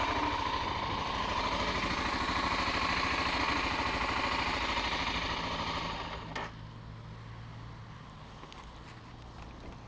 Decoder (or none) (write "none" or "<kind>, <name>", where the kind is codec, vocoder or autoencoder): none